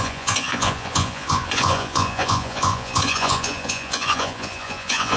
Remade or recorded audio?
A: remade